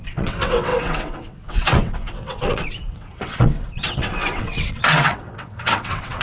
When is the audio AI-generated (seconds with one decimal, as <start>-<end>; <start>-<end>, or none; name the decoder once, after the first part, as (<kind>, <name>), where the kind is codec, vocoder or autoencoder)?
0.0-6.2 (vocoder, WaveNeXt)